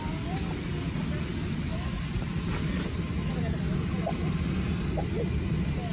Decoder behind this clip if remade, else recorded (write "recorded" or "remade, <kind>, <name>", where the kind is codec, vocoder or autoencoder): recorded